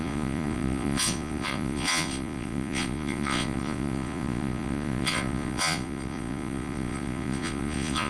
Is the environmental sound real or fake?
fake